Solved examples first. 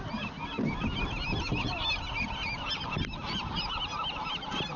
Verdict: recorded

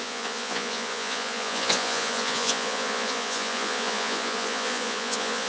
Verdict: remade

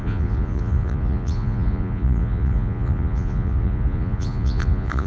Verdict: remade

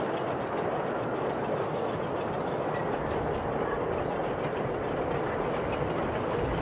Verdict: recorded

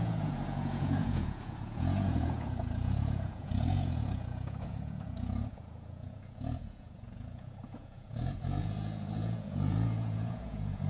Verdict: remade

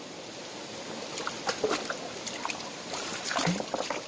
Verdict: recorded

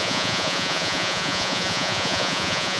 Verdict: remade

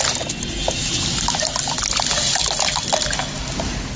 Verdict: recorded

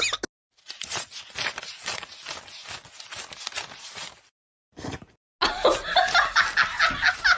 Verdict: recorded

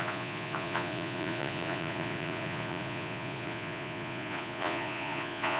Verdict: remade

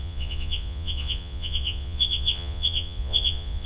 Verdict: remade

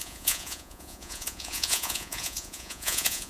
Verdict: remade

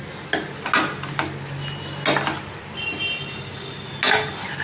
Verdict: recorded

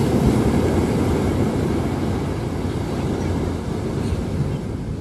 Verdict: recorded